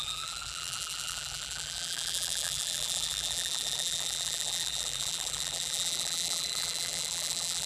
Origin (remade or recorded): remade